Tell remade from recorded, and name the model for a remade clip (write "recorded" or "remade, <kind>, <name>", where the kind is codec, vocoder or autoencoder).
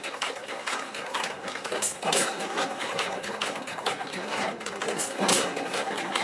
remade, codec, SNAC